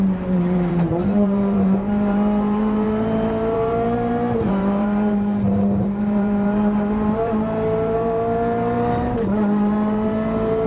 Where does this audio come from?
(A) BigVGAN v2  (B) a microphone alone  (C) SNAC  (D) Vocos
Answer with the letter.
A